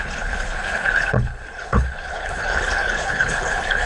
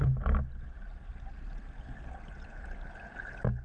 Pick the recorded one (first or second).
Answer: second